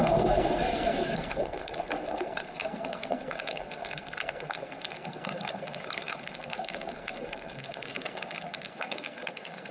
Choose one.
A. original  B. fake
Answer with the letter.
B